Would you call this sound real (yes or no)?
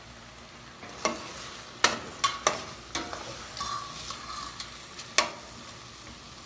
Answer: yes